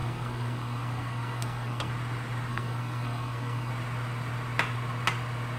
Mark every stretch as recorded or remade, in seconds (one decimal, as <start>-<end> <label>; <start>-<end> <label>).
0.0-1.9 remade; 1.9-2.5 recorded; 2.5-3.7 remade; 3.7-5.6 recorded